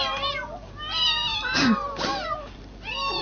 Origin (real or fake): real